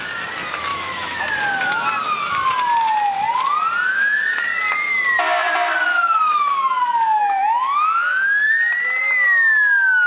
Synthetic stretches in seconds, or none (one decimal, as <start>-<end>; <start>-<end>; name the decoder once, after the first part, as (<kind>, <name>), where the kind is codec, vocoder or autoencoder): 0.7-1.2 (autoencoder, DAC-VAE); 3.9-4.4; 5.9-8.5